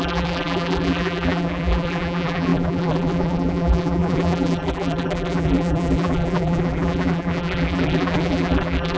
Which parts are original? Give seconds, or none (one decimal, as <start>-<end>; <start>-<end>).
none